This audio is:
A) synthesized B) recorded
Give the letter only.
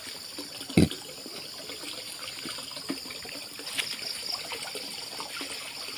B